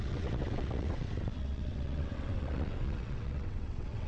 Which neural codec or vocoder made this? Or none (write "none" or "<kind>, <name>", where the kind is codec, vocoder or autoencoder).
vocoder, WaveNeXt